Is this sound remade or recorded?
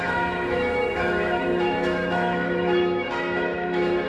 remade